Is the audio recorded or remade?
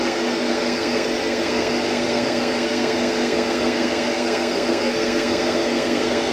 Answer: remade